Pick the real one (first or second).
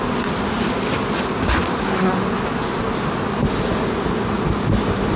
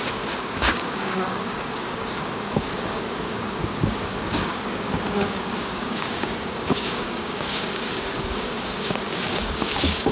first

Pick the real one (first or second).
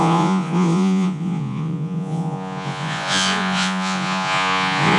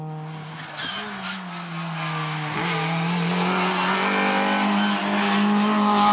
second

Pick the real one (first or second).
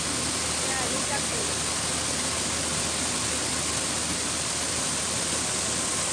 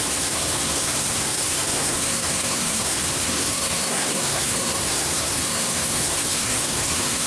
first